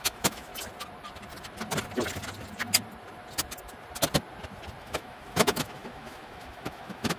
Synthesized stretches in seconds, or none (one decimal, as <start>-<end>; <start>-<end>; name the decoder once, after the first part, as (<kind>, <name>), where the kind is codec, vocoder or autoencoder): 0.0-0.5 (autoencoder, DAC-VAE); 4.8-7.2